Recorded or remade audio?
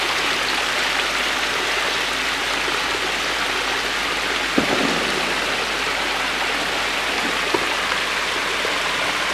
recorded